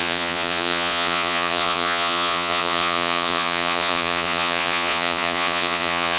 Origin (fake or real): fake